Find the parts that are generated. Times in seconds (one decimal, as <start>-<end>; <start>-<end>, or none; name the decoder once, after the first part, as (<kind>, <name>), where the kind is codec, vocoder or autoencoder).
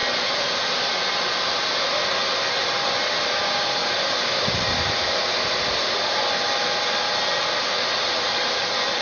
none